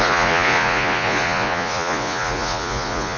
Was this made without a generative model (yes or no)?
no